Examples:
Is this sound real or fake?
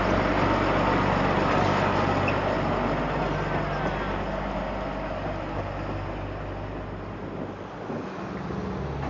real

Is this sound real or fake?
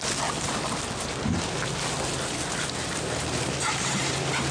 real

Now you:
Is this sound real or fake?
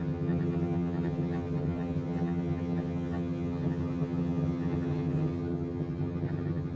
fake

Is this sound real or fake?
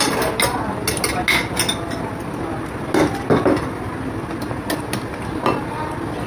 real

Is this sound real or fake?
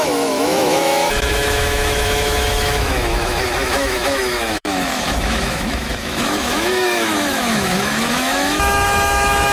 fake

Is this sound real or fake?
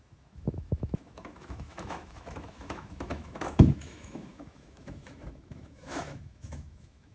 fake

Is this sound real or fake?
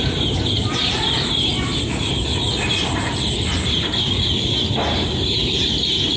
fake